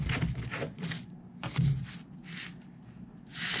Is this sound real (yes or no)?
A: yes